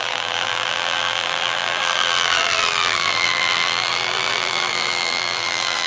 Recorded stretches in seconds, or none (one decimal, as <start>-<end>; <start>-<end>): none